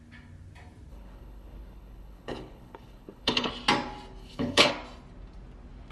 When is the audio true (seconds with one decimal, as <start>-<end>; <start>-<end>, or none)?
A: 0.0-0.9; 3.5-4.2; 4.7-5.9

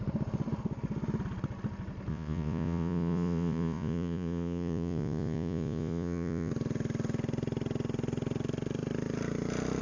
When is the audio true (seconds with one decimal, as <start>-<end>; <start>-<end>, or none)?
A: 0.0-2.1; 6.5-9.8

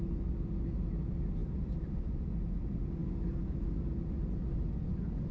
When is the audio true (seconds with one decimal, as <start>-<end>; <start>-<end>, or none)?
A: 0.0-1.4; 2.3-5.3